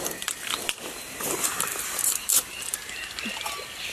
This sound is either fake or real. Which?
fake